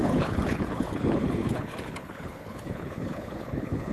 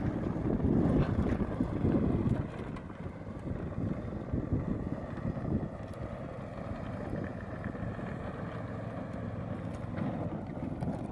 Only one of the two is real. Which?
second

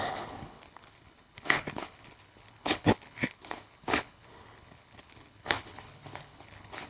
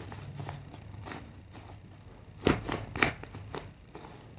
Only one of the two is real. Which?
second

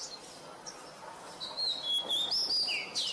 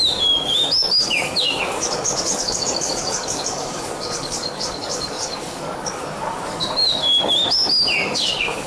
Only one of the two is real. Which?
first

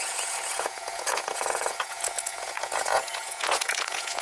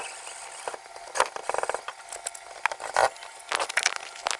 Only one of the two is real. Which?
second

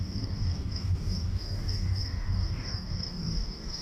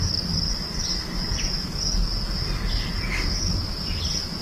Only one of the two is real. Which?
second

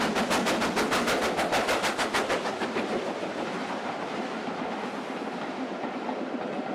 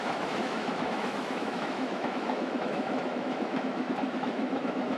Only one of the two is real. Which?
first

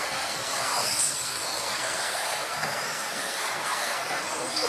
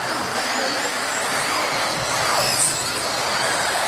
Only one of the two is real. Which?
second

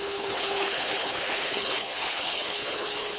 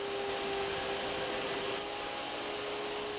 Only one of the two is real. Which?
second